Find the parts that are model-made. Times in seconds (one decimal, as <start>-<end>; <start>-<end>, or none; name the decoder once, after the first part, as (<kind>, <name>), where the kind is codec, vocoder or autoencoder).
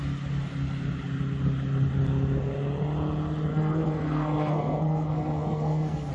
3.5-6.1 (codec, SNAC)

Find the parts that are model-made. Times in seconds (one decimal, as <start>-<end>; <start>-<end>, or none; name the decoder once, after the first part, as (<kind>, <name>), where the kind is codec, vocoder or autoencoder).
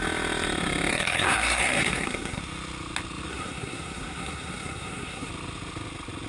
0.9-2.4 (codec, SNAC); 3.3-5.3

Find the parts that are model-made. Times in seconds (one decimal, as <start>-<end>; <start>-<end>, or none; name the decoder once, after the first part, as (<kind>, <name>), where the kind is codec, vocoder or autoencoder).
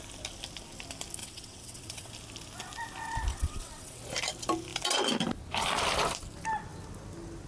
1.2-2.1 (vocoder, WaveNeXt); 3.3-4.0